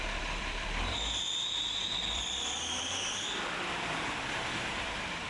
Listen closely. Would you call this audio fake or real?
fake